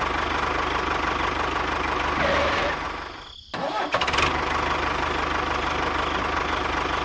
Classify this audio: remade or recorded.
recorded